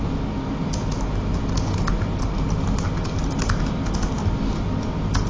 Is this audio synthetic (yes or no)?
no